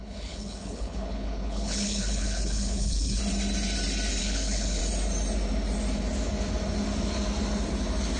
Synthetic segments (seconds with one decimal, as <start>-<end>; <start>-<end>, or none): 0.0-3.2; 4.2-4.8